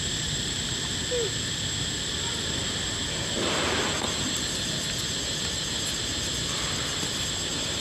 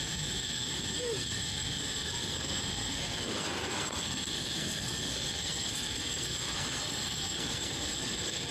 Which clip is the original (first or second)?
first